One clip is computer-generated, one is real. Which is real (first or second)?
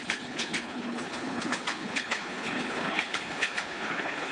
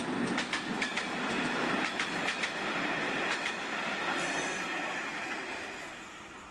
second